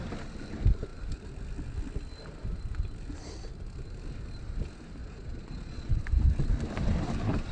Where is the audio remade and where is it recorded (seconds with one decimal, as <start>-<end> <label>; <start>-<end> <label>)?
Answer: 0.0-5.0 recorded; 5.0-6.0 remade; 6.0-7.5 recorded